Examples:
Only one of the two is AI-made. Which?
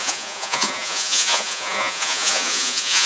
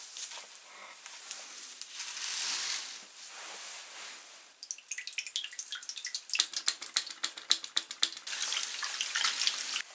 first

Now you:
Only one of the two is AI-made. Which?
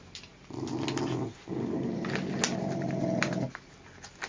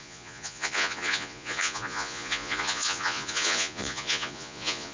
second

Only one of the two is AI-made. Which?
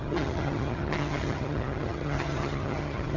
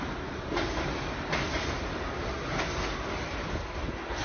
first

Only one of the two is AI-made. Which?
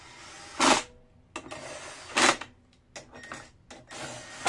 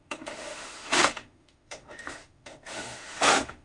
second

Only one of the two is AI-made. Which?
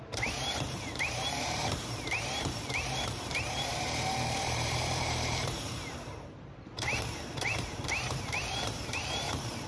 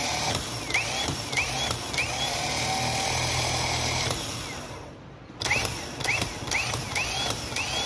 first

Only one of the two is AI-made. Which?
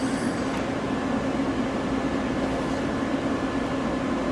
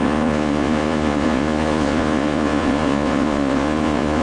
second